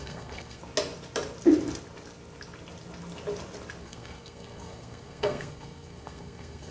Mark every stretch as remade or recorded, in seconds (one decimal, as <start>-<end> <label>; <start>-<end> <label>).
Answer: 0.0-0.6 remade; 0.6-3.8 recorded; 3.8-6.7 remade